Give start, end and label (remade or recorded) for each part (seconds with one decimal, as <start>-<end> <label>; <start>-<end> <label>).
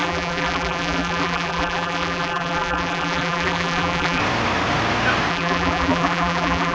0.0-4.2 remade; 4.2-5.3 recorded; 5.3-6.7 remade